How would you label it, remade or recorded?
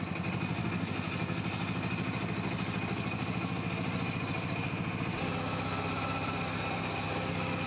recorded